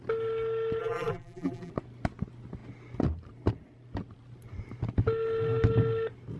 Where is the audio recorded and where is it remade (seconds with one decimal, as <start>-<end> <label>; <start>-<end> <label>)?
0.0-0.8 recorded; 0.8-1.7 remade; 1.7-6.4 recorded